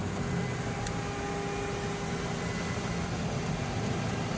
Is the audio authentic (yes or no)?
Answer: yes